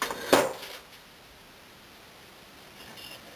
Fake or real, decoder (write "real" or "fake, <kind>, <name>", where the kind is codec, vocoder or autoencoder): real